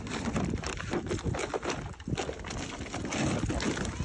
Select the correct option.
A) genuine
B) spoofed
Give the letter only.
A